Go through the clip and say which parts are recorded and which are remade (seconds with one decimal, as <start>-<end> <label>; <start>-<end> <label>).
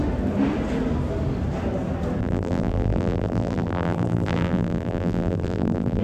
0.0-2.2 recorded; 2.2-6.0 remade